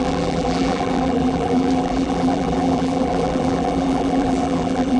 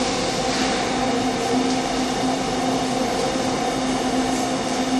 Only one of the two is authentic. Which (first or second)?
second